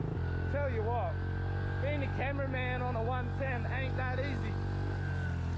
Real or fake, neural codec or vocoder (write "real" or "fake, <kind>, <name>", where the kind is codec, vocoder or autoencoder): real